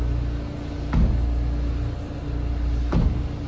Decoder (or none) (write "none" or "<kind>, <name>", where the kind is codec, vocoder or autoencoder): none